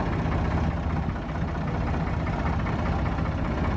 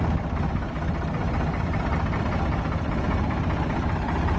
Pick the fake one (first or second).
second